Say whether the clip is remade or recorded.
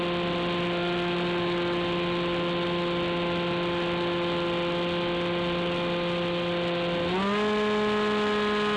recorded